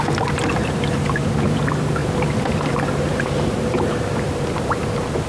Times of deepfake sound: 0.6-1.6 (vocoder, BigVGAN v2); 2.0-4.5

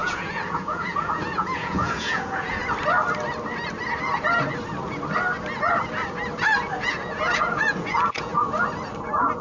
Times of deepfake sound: 0.0-2.6 (vocoder, Vocos); 6.8-8.3

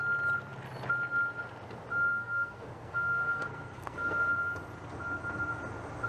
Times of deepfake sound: 2.1-4.5 (codec, SNAC)

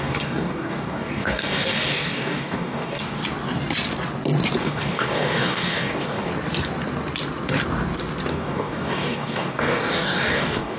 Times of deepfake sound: 0.0-3.2 (codec, DAC); 4.6-6.3; 8.3-10.8

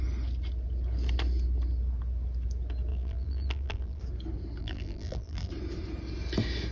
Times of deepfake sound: 2.9-4.0 (vocoder, BigVGAN v2); 4.6-5.5

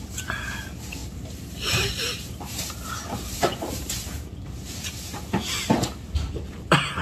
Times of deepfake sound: 1.0-5.2 (vocoder, BigVGAN v2)

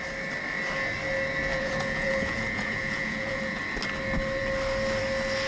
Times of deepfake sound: 1.5-3.6 (vocoder, Vocos)

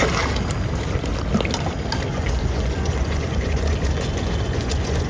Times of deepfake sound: 2.1-5.1 (vocoder, Vocos)